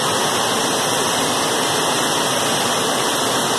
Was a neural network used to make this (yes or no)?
no